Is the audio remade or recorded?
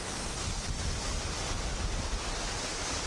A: recorded